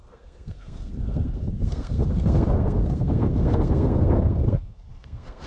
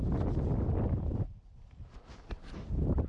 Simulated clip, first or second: first